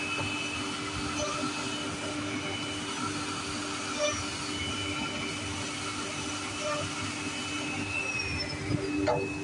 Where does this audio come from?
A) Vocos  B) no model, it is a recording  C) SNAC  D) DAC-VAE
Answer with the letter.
B